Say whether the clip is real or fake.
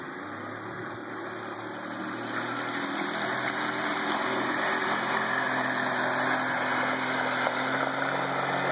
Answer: real